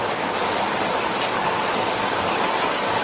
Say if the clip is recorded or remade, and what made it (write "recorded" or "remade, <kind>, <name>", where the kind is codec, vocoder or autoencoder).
remade, codec, DAC